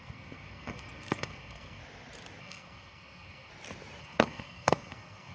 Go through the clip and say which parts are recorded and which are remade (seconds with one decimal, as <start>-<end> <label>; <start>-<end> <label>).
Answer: 0.0-1.8 remade; 1.8-2.4 recorded; 2.4-3.5 remade; 3.5-4.0 recorded; 4.0-5.3 remade